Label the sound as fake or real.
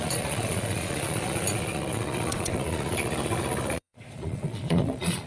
fake